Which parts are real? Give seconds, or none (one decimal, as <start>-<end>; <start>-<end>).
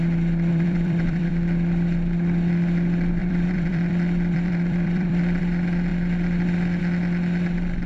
0.0-0.5; 1.3-3.2; 5.4-7.9